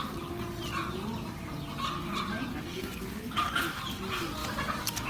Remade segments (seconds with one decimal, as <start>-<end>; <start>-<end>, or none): 2.5-3.0